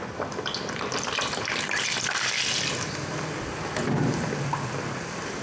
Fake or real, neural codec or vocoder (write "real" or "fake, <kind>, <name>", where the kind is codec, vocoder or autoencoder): real